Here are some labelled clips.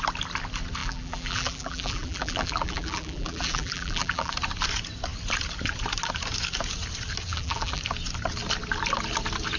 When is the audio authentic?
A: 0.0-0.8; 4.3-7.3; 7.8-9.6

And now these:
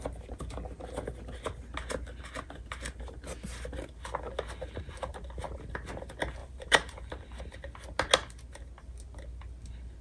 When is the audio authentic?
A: 0.0-6.4; 7.4-10.0

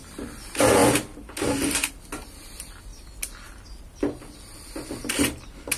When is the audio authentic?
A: 0.0-5.8

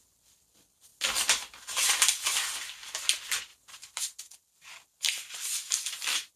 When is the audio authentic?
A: 0.0-3.5; 4.2-6.4

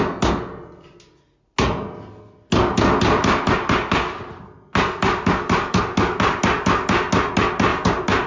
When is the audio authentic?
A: 0.0-5.0; 5.8-7.7

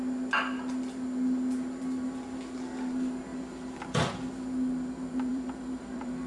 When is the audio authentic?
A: 0.0-3.3; 4.3-5.3

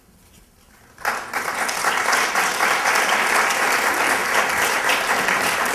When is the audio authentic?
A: 0.0-4.2; 5.1-5.7

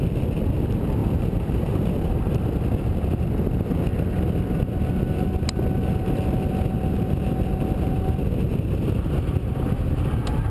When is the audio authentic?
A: 0.0-1.0; 2.1-10.5